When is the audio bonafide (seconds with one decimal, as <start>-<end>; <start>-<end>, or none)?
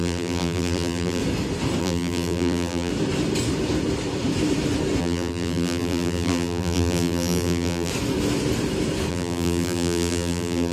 1.2-1.8; 2.9-5.0; 7.9-9.1